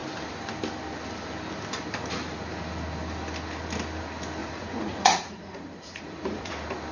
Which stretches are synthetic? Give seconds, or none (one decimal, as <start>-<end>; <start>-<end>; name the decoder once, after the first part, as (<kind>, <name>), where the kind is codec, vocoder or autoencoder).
4.4-6.5 (vocoder, Vocos)